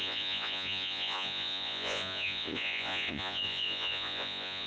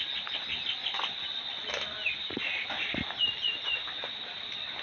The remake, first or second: first